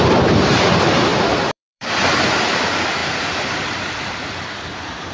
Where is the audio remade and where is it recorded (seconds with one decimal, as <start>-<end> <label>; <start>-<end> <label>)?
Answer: 0.0-1.1 recorded; 1.1-1.9 remade; 1.9-3.0 recorded; 3.0-4.6 remade; 4.6-5.1 recorded